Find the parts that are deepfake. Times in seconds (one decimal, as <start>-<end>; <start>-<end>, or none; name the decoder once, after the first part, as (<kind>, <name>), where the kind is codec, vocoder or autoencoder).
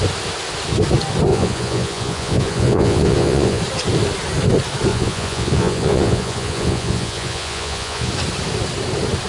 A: 1.3-3.6 (vocoder, Vocos); 4.9-8.1